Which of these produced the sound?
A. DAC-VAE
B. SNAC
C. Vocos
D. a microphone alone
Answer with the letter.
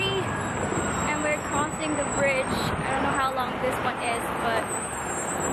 D